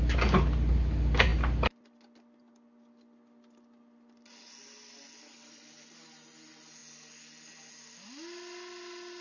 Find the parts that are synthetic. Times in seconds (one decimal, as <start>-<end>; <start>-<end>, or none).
none